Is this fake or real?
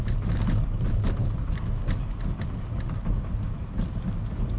real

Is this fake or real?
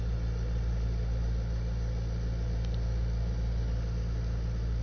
real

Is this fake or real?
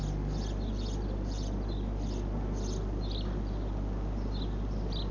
real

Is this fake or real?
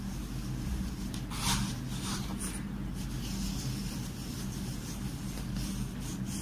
real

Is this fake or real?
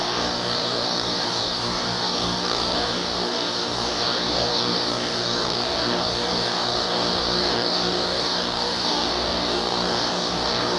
fake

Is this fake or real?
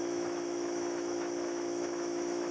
fake